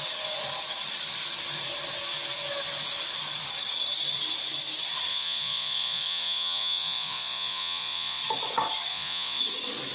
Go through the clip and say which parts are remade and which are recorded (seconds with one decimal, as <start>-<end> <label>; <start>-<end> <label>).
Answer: 0.0-5.1 recorded; 5.1-8.2 remade; 8.2-8.9 recorded; 8.9-9.4 remade; 9.4-9.9 recorded